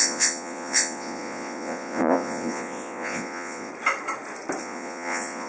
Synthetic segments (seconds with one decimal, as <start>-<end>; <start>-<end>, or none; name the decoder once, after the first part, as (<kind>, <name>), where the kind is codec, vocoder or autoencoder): 0.0-3.7 (vocoder, Vocos); 4.6-5.5